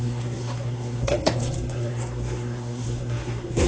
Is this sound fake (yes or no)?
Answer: yes